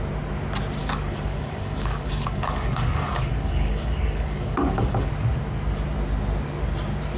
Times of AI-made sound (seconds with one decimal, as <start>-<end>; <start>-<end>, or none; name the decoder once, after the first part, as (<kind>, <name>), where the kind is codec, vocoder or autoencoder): 0.8-5.1 (codec, DAC)